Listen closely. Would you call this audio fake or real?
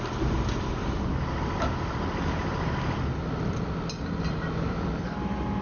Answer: real